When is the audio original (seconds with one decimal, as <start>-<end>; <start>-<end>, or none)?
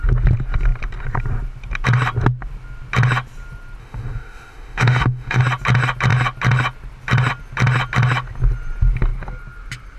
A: 0.0-3.8; 5.4-10.0